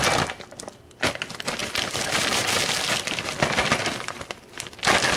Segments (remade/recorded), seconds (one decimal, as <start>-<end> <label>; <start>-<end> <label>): 0.0-1.6 recorded; 1.6-4.7 remade; 4.7-5.2 recorded